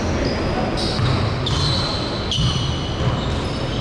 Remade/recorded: recorded